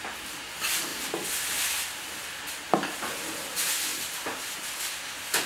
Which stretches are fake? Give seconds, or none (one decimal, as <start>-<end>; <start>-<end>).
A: none